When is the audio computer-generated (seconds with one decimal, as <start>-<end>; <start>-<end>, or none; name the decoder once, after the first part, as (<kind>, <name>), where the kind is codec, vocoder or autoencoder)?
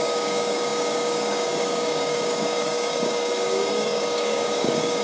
0.0-5.0 (codec, DAC)